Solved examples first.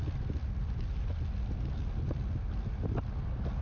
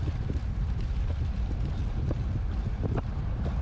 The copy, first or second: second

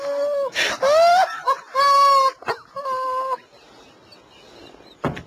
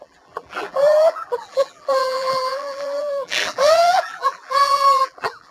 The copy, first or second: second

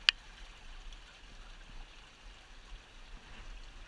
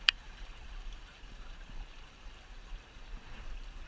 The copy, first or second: second